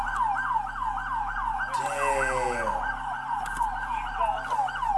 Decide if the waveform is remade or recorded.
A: recorded